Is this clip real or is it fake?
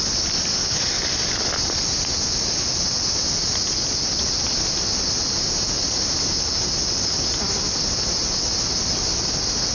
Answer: real